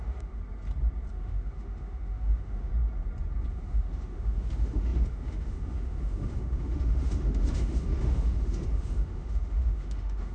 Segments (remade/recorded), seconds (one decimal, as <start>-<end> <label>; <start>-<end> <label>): 0.0-0.4 remade; 0.4-1.1 recorded; 1.1-2.7 remade; 2.7-3.5 recorded; 3.5-10.3 remade